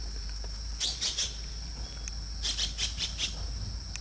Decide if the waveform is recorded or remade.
recorded